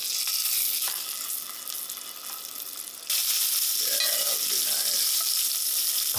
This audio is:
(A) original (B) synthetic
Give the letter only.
A